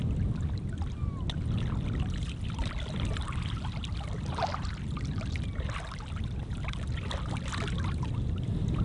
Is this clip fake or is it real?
real